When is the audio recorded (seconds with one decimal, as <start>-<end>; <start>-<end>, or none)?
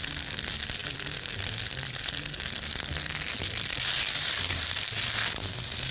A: none